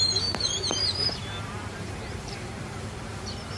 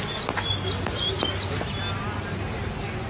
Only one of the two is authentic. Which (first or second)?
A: second